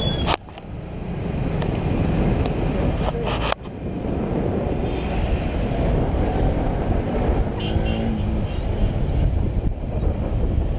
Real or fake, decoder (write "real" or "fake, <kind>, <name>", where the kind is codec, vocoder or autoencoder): real